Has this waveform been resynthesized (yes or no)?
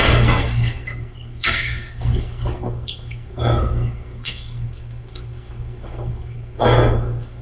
yes